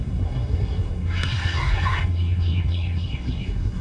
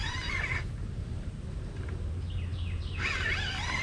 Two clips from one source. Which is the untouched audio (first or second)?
second